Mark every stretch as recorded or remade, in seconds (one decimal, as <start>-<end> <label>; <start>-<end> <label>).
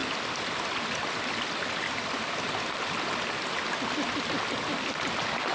0.0-5.5 recorded